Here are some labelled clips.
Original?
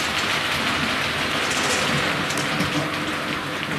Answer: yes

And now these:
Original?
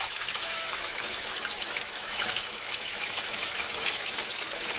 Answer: no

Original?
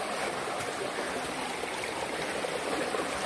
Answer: yes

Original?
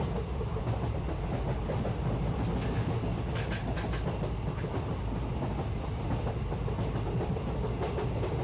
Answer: yes